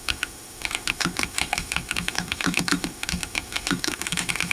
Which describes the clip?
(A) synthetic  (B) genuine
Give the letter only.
A